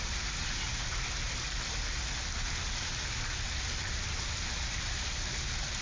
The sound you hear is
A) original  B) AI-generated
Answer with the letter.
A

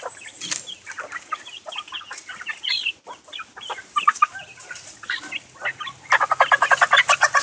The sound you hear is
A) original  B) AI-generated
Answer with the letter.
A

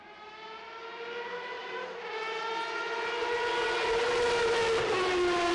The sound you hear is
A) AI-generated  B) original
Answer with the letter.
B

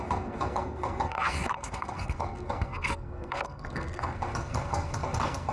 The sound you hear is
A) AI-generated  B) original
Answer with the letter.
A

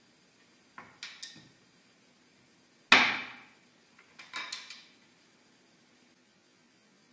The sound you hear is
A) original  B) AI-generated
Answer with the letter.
A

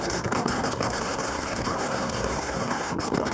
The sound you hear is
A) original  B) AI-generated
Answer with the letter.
B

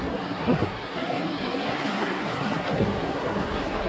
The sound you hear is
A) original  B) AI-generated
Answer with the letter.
B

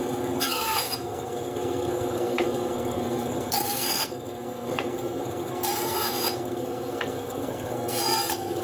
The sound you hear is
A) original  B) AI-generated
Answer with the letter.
B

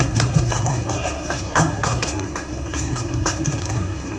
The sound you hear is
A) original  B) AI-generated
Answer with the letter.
B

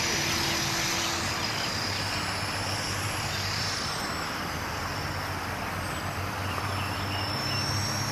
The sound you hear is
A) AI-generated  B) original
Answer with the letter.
B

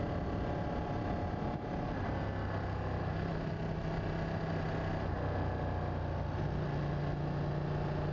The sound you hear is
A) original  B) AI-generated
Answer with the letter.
A